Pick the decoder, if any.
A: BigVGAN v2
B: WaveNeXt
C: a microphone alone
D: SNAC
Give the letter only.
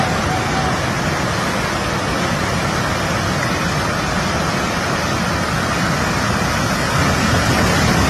C